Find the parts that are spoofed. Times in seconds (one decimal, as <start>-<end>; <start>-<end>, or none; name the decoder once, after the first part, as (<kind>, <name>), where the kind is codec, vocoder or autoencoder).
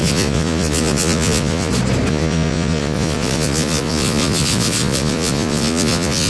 0.0-1.7 (vocoder, Vocos); 2.1-6.3